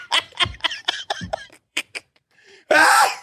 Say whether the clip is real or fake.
fake